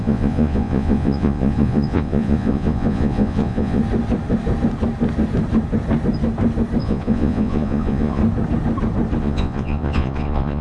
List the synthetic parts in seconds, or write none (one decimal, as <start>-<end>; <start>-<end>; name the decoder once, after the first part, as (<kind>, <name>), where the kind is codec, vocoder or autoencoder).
0.0-3.8 (vocoder, Vocos); 6.8-8.2; 9.2-10.6